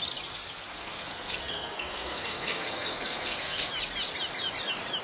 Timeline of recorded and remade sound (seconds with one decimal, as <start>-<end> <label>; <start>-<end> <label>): 0.0-0.7 recorded; 0.7-3.7 remade; 3.7-5.0 recorded